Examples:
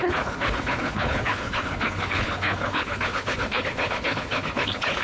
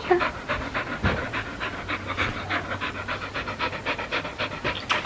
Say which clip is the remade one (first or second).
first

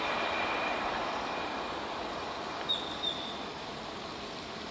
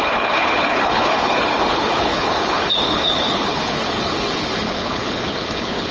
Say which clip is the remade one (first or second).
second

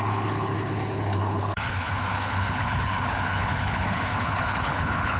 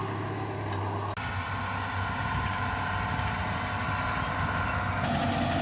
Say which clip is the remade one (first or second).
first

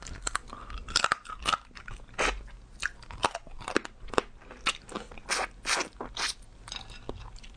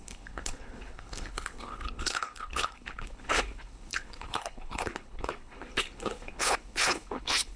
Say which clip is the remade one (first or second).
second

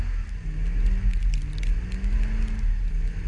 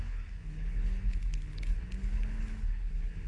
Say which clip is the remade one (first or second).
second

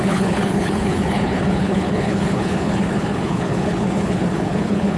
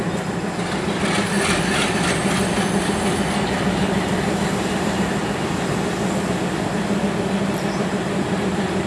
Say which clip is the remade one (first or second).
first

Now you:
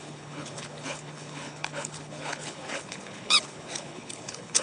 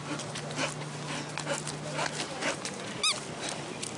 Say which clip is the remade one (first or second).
first